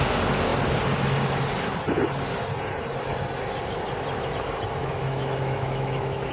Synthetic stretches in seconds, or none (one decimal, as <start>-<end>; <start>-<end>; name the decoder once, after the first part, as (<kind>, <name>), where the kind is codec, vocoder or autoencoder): 4.8-6.3 (autoencoder, DAC-VAE)